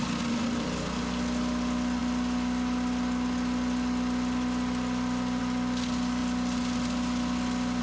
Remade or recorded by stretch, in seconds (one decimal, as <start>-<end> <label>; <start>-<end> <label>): 0.0-7.8 recorded

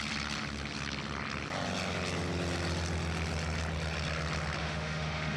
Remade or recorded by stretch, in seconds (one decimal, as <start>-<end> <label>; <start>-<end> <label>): 0.0-4.6 recorded; 4.6-5.4 remade

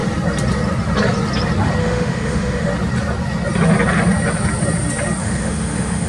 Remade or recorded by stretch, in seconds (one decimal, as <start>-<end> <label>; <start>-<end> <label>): 0.0-1.8 recorded; 1.8-2.7 remade; 2.7-5.2 recorded; 5.2-6.1 remade

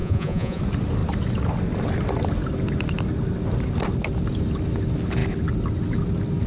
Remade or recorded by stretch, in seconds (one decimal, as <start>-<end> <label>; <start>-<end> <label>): 0.0-0.6 remade; 0.6-6.5 recorded

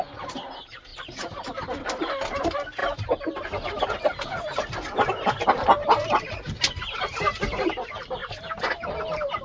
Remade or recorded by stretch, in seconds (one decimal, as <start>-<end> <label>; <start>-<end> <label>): 0.0-0.9 recorded; 0.9-2.4 remade; 2.4-8.2 recorded; 8.2-8.9 remade; 8.9-9.4 recorded

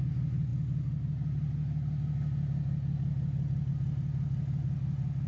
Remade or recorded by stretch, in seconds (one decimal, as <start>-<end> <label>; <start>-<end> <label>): 0.0-5.3 recorded

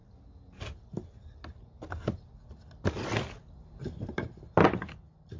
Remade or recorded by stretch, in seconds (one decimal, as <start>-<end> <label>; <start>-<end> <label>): 0.0-5.4 recorded

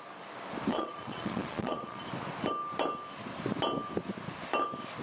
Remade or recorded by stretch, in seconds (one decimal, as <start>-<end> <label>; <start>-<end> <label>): 0.0-0.7 recorded; 0.7-2.0 remade; 2.0-5.0 recorded